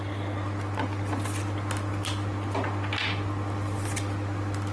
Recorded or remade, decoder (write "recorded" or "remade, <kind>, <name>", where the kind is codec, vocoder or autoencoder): recorded